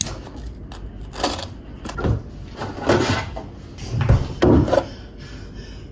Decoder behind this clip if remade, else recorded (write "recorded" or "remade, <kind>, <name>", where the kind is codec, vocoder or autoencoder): recorded